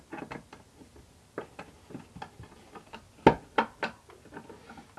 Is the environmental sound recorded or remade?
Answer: recorded